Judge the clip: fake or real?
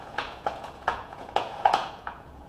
fake